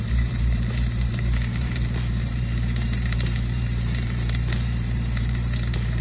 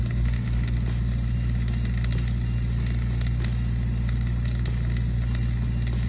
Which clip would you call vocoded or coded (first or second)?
first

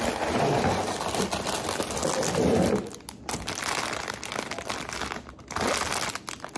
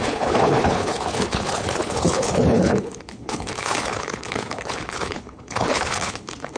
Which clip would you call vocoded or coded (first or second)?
second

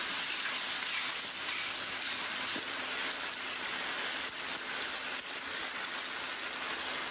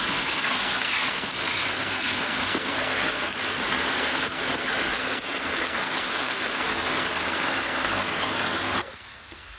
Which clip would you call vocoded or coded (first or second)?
second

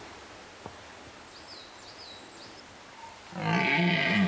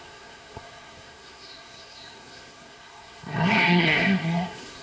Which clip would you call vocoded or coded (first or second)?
second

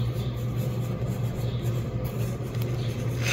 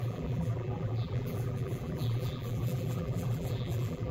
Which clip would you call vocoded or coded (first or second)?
second